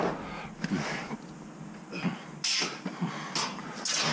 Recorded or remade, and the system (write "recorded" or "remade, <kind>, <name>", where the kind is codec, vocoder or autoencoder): recorded